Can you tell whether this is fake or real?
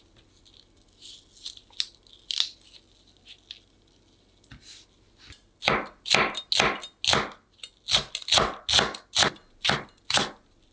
real